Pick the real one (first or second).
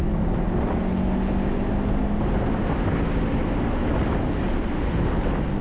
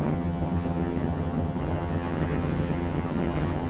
first